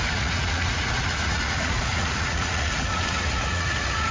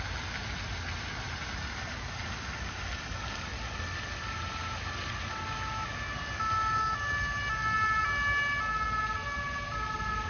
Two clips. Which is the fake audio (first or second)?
first